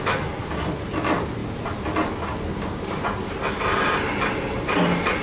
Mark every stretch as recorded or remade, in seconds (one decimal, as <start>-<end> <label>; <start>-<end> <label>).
0.0-5.2 recorded